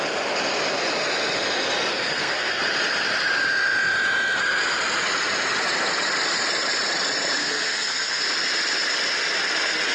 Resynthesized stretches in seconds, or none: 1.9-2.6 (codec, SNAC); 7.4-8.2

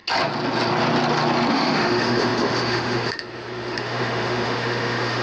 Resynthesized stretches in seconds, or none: 1.5-5.2 (autoencoder, DAC-VAE)

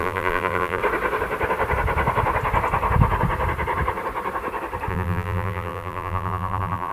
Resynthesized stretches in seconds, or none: 0.0-0.8 (vocoder, BigVGAN v2); 4.9-6.9

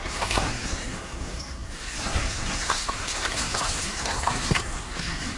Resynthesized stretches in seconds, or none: 0.0-5.4 (codec, SNAC)

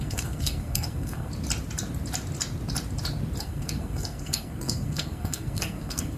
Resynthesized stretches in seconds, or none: 0.0-1.3 (codec, SNAC); 3.4-6.2

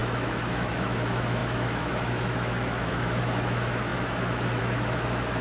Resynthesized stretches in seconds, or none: 0.0-5.4 (autoencoder, DAC-VAE)

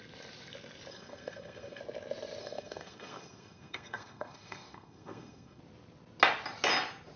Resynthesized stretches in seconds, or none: 0.9-1.8 (codec, SNAC); 2.4-5.6

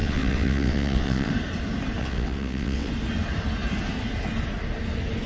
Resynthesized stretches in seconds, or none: 0.0-1.3 (vocoder, WaveNeXt); 2.0-2.9